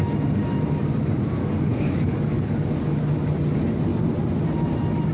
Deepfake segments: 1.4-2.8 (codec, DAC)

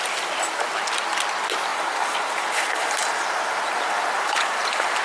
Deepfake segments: 1.7-5.0 (vocoder, BigVGAN v2)